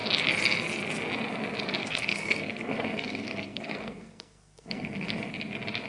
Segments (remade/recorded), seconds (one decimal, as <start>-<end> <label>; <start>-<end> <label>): 0.0-1.8 recorded; 1.8-5.3 remade; 5.3-5.9 recorded